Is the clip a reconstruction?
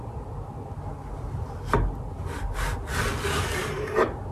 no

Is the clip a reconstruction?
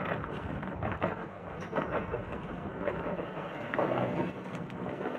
yes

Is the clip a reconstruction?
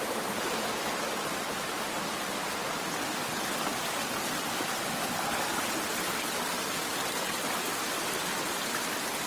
no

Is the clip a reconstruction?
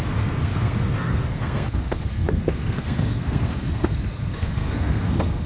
yes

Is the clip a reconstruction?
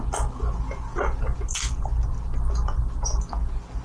no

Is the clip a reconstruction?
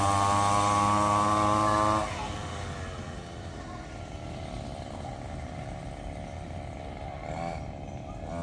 no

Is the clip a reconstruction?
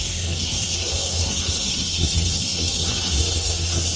yes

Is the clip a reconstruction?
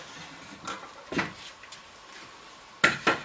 no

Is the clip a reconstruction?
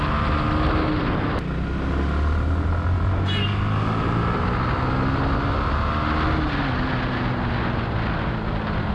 no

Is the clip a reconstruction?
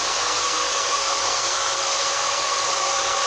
yes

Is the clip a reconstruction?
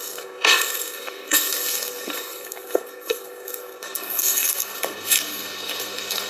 yes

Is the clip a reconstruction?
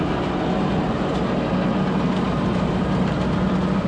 no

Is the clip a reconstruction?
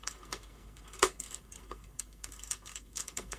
yes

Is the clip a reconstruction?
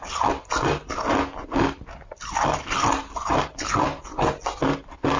no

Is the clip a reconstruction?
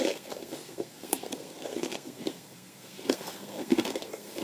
yes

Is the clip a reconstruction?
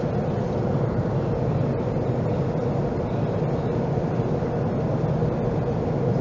no